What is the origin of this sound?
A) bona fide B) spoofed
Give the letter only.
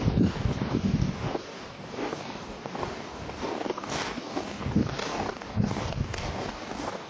B